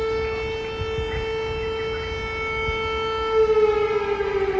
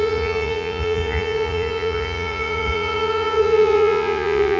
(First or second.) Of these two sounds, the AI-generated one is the second